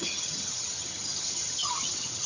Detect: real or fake fake